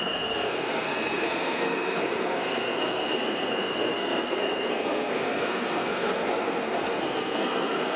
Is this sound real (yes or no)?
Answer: no